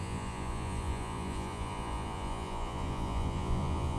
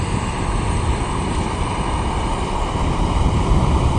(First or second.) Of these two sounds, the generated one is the first